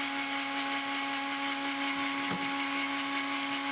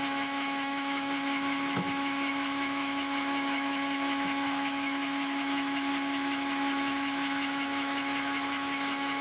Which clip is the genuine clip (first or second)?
first